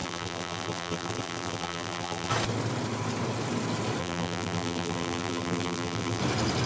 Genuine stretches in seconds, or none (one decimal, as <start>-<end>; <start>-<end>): 2.3-4.0; 6.2-6.7